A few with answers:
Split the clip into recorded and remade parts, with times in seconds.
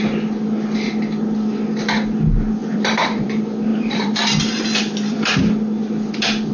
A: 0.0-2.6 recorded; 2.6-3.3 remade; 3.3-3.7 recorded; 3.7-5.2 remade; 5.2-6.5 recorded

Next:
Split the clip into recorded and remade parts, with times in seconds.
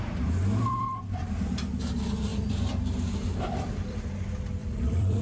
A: 0.0-0.4 recorded; 0.4-1.4 remade; 1.4-2.3 recorded; 2.3-4.0 remade; 4.0-4.6 recorded; 4.6-5.2 remade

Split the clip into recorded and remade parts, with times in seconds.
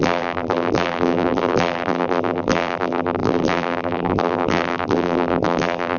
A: 0.0-6.0 remade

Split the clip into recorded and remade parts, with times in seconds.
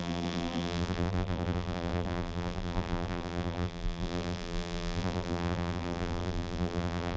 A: 0.0-7.2 remade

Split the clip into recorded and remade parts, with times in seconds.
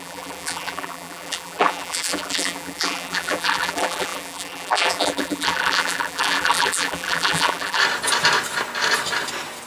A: 0.0-7.8 remade; 7.8-9.7 recorded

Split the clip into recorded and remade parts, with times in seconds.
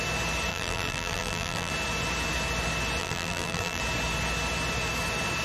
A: 0.0-0.5 recorded; 0.5-1.7 remade; 1.7-3.0 recorded; 3.0-3.8 remade; 3.8-5.4 recorded